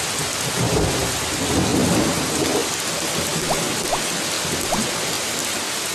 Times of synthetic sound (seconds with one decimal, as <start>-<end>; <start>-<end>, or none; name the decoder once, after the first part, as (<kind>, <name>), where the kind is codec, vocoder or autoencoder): none